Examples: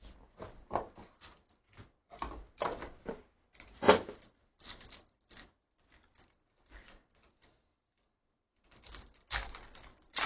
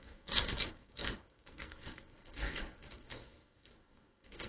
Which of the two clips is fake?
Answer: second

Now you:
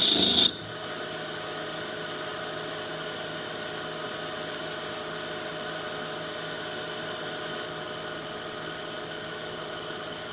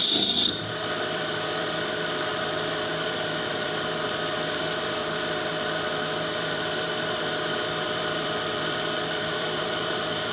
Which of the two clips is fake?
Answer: second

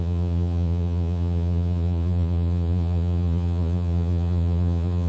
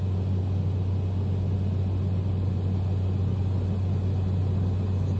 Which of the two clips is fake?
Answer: first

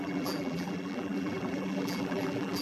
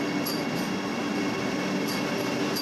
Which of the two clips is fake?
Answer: first